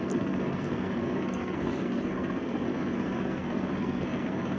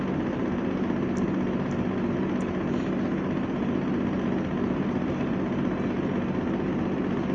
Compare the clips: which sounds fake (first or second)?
first